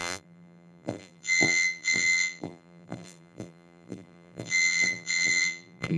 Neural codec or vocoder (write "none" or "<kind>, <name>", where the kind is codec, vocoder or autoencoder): vocoder, BigVGAN v2